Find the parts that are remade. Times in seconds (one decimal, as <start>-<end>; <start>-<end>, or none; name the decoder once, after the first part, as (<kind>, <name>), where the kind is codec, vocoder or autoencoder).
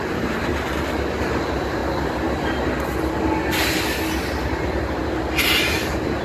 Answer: 0.0-0.5 (vocoder, BigVGAN v2); 1.3-1.8; 4.6-5.0; 5.6-6.2